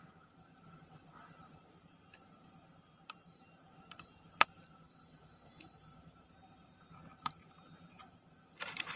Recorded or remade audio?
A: remade